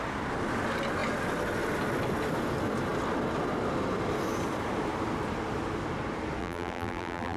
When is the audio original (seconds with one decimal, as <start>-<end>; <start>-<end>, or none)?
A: 0.0-6.4